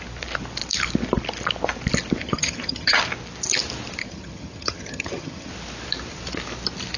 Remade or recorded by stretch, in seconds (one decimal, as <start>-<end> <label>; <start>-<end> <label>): 0.0-2.2 recorded; 2.2-3.0 remade; 3.0-4.0 recorded; 4.0-5.5 remade; 5.5-7.0 recorded